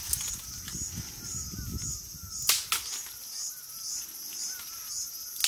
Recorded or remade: recorded